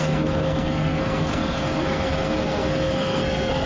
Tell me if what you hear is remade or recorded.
remade